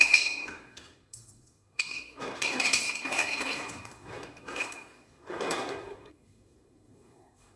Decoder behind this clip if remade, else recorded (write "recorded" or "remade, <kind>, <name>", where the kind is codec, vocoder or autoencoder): remade, codec, SNAC